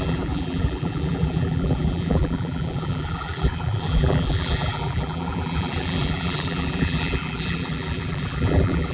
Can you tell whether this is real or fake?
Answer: fake